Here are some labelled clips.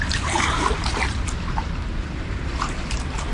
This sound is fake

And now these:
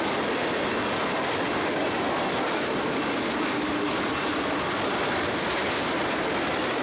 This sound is real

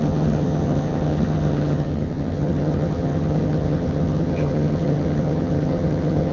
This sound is fake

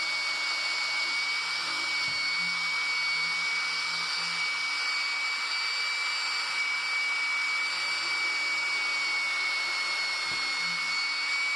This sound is real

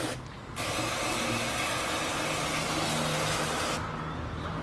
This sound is real